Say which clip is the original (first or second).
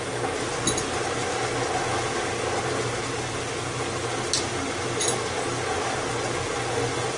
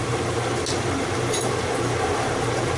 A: first